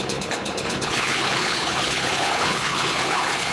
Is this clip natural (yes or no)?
no